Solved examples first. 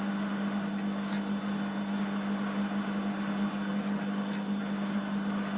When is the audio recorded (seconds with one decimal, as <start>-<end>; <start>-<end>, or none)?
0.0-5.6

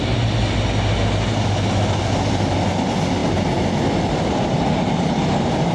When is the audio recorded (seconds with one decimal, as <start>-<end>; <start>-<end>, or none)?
0.0-5.7

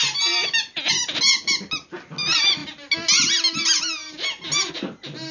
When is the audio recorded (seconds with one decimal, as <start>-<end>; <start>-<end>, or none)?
0.0-5.3

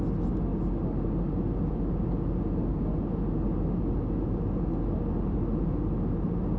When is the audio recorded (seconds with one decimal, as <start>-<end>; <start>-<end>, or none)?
0.0-6.6

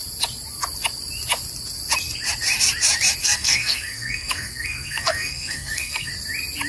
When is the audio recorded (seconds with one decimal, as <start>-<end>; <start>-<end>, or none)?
0.0-3.2; 6.1-6.7

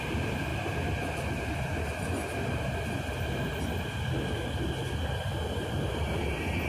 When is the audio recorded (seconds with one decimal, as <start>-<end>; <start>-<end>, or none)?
0.0-6.7